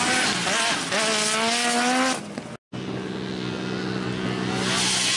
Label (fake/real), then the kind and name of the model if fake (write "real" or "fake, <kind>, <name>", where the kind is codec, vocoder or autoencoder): real